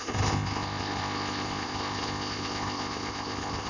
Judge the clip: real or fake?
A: fake